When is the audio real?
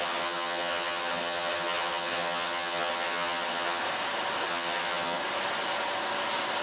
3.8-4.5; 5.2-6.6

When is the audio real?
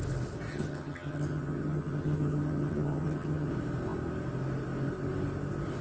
0.0-0.5; 3.5-5.8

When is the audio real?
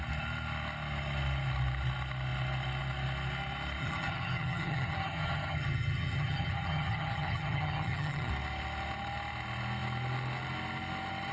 0.0-3.8; 8.3-11.3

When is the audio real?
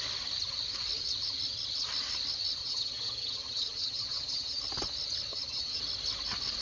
0.0-2.6; 4.6-5.3; 5.8-6.6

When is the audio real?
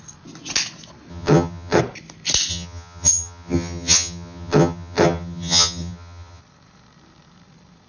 0.0-1.1; 1.8-2.5; 6.4-7.9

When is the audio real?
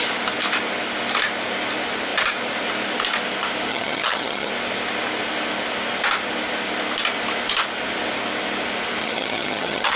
0.0-3.7; 4.5-9.0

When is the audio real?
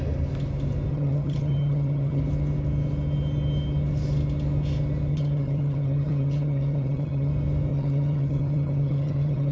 0.0-0.9; 2.2-5.1; 7.3-7.7